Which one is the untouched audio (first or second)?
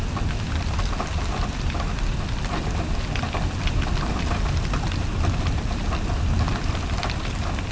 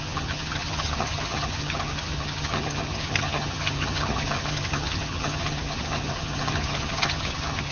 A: first